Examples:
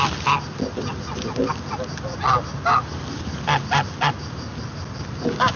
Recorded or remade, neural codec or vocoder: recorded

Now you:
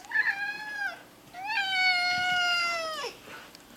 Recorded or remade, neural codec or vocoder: recorded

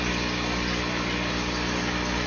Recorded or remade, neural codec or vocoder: recorded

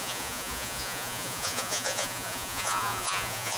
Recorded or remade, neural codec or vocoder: remade, vocoder, Vocos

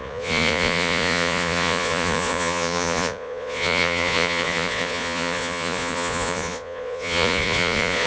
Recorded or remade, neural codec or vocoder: remade, vocoder, Vocos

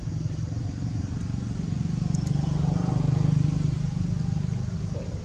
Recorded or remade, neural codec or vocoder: recorded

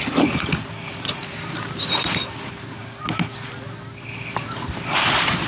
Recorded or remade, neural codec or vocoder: recorded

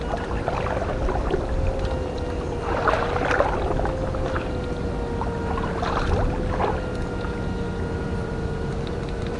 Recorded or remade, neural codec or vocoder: recorded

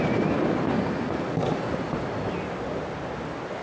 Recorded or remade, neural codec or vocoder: recorded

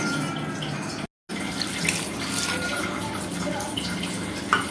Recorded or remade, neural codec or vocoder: recorded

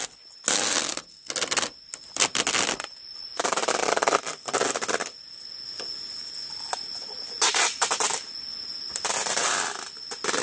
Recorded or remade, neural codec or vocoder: recorded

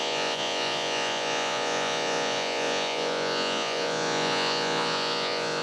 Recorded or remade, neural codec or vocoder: remade, vocoder, Vocos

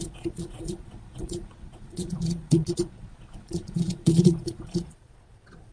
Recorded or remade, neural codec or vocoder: remade, vocoder, Vocos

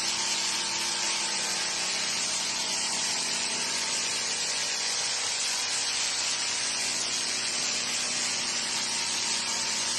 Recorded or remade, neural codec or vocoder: remade, vocoder, Vocos